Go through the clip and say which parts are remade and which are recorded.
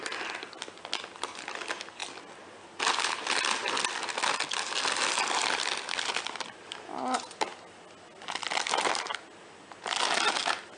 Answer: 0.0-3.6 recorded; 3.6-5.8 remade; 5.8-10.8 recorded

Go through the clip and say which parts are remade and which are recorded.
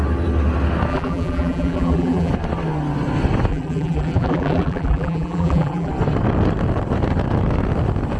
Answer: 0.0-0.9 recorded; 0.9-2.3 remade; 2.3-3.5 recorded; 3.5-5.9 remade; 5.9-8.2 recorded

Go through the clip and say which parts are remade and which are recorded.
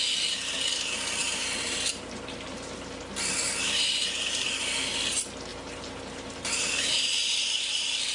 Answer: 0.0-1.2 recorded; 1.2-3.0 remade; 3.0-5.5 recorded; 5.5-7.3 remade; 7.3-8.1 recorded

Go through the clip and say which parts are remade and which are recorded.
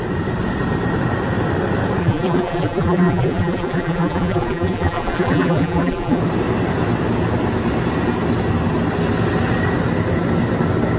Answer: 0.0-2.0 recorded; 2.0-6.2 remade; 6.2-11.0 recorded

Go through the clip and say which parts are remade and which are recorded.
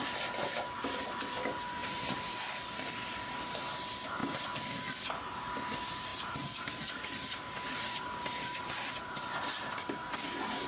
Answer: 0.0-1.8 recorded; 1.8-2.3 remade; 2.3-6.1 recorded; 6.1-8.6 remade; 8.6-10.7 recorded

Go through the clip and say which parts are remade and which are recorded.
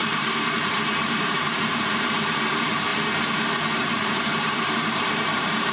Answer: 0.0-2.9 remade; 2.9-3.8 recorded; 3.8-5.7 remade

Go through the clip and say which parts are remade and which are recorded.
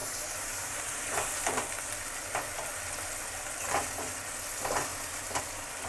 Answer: 0.0-1.6 remade; 1.6-5.9 recorded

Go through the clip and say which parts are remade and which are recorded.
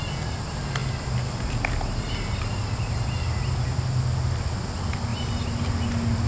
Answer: 0.0-6.3 recorded